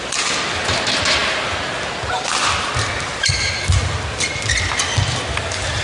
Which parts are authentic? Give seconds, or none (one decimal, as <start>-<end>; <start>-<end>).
0.0-5.8